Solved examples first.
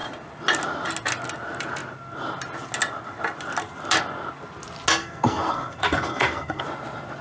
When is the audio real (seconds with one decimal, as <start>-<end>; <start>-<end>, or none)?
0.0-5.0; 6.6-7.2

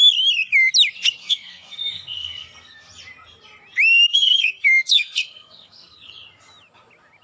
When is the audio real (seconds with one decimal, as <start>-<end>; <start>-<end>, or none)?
0.0-1.2; 2.8-4.1; 6.1-7.2

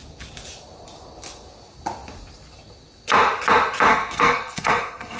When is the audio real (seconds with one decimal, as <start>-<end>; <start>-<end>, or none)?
0.0-3.9

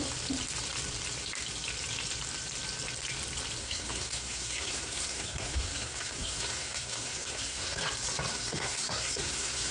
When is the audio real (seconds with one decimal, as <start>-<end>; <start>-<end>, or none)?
0.0-3.6; 7.8-8.3

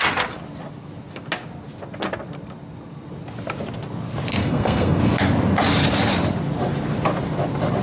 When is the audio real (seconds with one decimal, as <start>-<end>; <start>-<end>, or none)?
0.0-4.4; 5.0-7.8

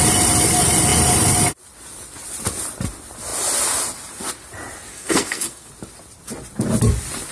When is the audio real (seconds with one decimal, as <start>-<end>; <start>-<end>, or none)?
0.0-4.9; 5.7-7.3

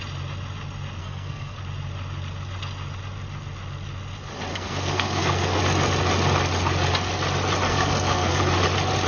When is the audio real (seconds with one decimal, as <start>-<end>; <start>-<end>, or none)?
0.0-1.0; 1.6-4.5; 5.6-7.7; 8.4-9.1

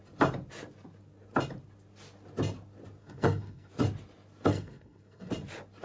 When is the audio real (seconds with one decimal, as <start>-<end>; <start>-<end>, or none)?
0.0-3.0; 3.7-4.5; 5.3-5.8